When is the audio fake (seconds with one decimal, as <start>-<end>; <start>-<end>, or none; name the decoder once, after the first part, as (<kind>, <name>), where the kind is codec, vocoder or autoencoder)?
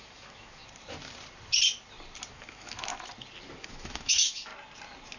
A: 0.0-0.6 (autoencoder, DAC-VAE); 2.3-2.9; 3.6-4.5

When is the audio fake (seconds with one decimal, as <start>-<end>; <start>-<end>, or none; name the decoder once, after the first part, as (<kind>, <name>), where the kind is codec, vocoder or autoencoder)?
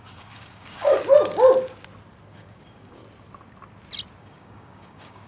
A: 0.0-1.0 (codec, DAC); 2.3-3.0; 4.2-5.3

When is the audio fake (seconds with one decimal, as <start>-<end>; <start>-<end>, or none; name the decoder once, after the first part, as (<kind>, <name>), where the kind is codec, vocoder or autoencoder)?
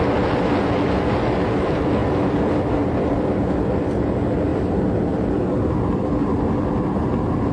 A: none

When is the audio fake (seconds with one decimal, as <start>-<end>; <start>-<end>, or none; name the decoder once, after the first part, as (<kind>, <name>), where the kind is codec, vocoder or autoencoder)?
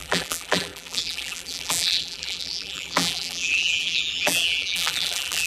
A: 0.0-5.5 (vocoder, BigVGAN v2)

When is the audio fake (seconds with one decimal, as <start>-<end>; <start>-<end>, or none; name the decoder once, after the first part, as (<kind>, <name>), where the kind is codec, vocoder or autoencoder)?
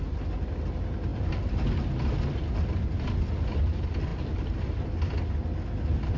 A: 1.1-1.6 (vocoder, BigVGAN v2)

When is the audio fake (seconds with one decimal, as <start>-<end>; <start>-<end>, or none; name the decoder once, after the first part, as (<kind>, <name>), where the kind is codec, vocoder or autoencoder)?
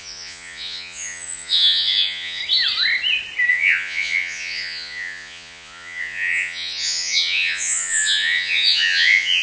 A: 0.0-2.4 (vocoder, Vocos); 3.5-9.4